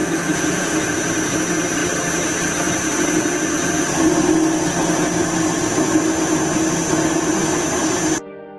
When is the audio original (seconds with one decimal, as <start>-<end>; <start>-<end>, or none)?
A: 1.0-8.6